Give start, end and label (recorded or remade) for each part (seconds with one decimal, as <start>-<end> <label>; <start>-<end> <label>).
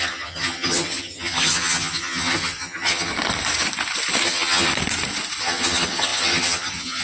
0.0-3.1 remade; 3.1-4.2 recorded; 4.2-4.7 remade; 4.7-5.4 recorded; 5.4-7.0 remade